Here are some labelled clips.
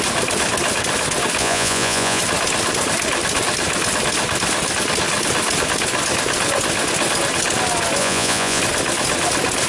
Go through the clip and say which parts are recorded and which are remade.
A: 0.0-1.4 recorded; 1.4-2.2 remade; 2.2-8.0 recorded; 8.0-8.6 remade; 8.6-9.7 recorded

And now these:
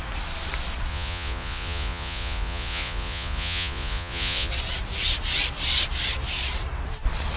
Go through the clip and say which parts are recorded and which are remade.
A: 0.0-0.9 recorded; 0.9-4.5 remade; 4.5-7.4 recorded

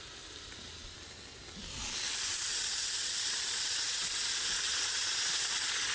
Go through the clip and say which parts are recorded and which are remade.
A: 0.0-2.3 recorded; 2.3-5.9 remade

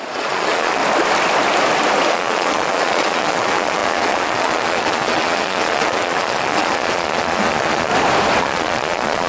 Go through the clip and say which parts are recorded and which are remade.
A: 0.0-0.8 remade; 0.8-2.1 recorded; 2.1-7.9 remade; 7.9-8.4 recorded; 8.4-9.3 remade

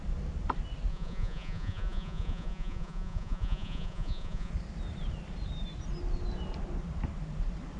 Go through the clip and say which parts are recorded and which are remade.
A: 0.0-0.9 recorded; 0.9-4.5 remade; 4.5-7.8 recorded